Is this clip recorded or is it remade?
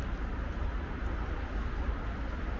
recorded